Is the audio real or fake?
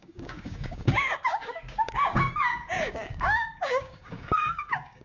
fake